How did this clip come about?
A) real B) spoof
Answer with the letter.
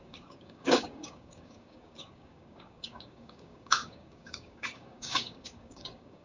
B